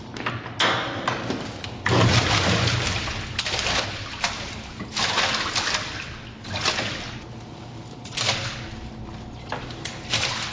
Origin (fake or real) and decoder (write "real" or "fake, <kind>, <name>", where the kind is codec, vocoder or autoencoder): real